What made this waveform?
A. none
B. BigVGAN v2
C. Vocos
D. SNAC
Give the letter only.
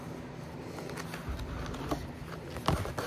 A